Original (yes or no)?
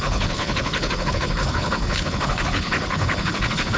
no